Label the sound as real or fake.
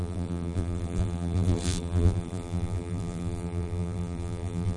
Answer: fake